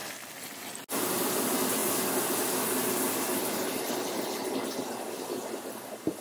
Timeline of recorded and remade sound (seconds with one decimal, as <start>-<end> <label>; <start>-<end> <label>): 0.0-6.2 recorded